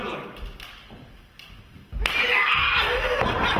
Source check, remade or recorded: recorded